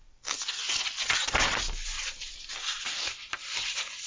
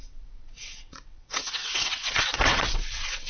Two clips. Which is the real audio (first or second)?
first